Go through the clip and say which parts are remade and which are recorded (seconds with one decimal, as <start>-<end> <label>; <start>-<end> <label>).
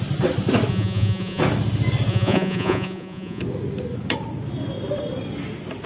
0.0-0.7 recorded; 0.7-1.4 remade; 1.4-2.1 recorded; 2.1-3.4 remade; 3.4-5.9 recorded